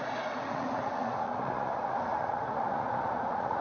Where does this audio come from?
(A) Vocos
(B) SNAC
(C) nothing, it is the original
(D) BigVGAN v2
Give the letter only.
A